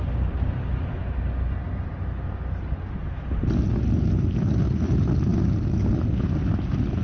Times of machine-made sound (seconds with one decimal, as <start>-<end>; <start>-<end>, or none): none